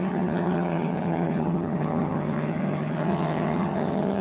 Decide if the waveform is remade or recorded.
remade